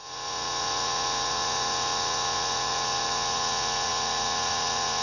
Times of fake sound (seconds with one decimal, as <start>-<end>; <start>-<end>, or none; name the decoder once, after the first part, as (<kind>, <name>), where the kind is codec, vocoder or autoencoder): 0.0-5.0 (vocoder, Vocos)